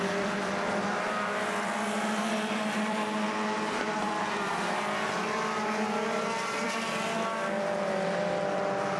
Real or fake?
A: fake